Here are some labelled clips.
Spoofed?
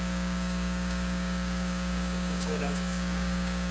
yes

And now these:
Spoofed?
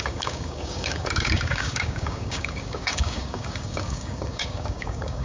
yes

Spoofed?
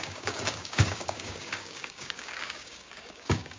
yes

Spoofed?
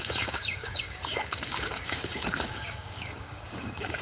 yes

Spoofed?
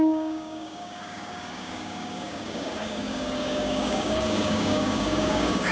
yes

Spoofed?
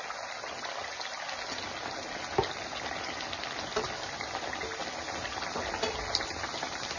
no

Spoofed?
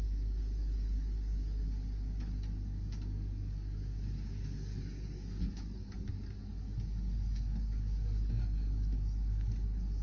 yes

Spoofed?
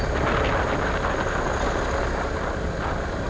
no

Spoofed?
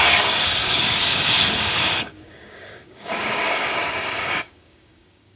yes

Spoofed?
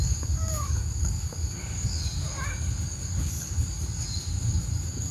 yes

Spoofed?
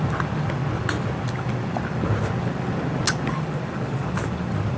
no